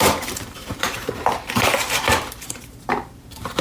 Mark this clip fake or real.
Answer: fake